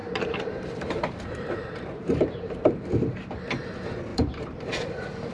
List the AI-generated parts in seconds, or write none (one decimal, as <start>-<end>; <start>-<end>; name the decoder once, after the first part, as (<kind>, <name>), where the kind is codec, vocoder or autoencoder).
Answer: 0.0-2.8 (vocoder, BigVGAN v2); 4.1-4.8